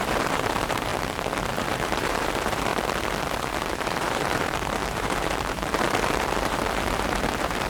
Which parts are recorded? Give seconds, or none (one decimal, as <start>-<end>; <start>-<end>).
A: 0.9-1.5; 2.7-3.2